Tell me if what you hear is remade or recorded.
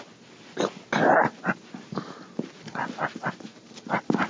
recorded